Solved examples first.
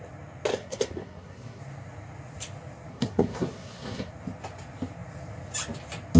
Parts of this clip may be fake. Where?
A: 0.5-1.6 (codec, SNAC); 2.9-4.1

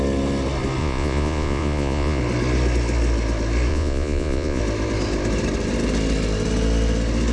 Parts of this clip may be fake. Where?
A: 0.8-2.2 (vocoder, Vocos); 3.7-4.6